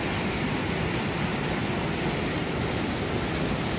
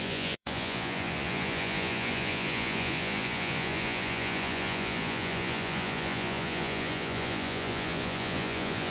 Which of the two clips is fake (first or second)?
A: second